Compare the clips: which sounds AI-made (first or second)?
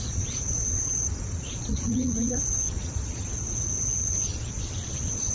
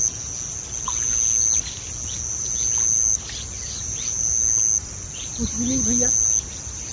first